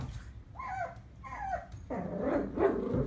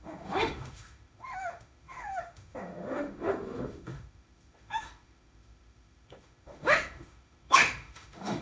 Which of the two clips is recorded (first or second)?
first